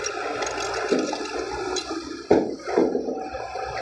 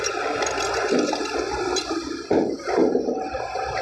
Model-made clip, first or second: second